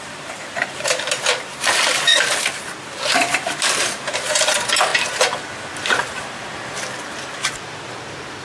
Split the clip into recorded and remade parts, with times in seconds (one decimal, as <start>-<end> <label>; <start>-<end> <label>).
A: 0.0-2.1 remade; 2.1-2.8 recorded; 2.8-4.9 remade; 4.9-8.4 recorded